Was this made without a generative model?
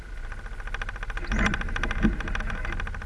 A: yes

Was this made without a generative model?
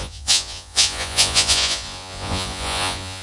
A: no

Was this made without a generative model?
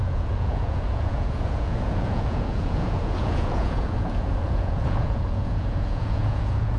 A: no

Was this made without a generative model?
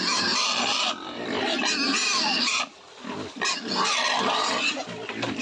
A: yes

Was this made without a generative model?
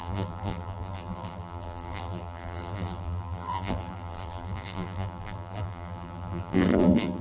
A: no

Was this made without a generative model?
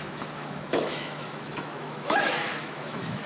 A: no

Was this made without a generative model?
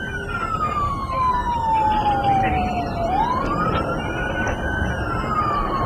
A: no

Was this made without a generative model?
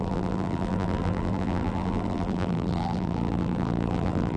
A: no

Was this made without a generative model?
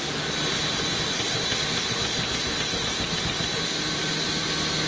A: yes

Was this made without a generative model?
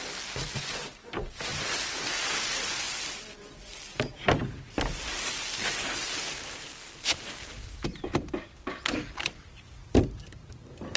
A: yes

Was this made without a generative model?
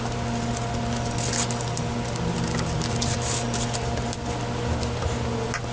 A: yes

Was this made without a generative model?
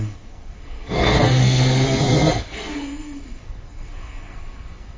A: no